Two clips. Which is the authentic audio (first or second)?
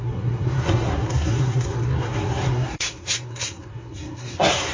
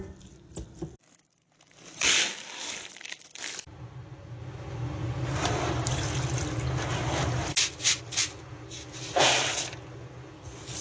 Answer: second